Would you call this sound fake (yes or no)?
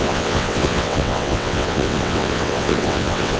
yes